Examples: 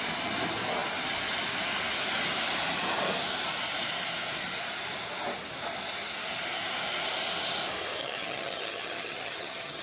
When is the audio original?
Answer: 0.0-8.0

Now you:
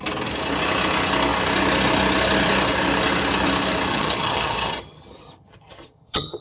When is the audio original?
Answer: 0.0-3.9

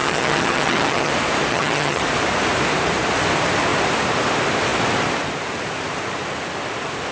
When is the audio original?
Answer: 1.1-1.5; 2.0-7.1